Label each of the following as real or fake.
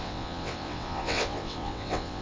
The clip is fake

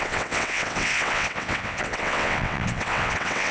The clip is fake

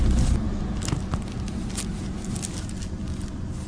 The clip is real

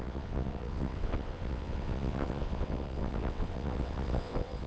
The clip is fake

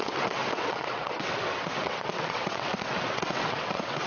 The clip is fake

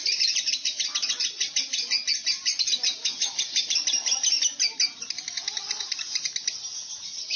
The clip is real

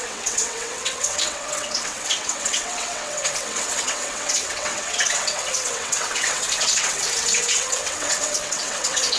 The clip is fake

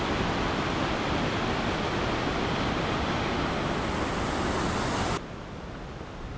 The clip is real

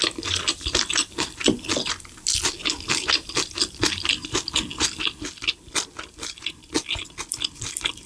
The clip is real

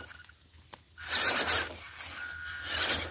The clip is real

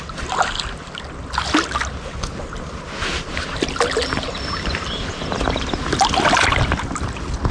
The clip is real